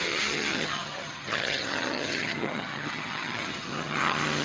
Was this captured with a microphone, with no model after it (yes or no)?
no